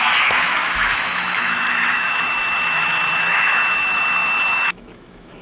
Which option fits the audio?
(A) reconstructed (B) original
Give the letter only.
A